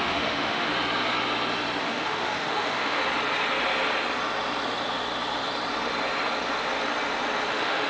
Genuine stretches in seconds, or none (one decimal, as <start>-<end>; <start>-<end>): 0.7-1.8; 3.0-7.5